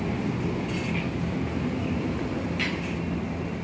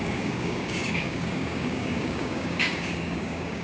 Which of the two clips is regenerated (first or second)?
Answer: second